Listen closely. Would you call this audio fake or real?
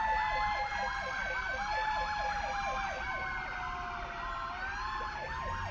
real